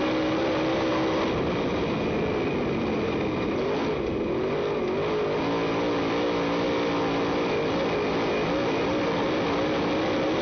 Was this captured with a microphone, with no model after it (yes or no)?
yes